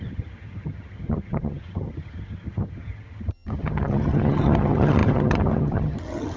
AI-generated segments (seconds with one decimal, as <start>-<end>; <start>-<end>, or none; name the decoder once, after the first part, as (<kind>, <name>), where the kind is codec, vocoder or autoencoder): 0.0-6.4 (vocoder, HiFi-GAN)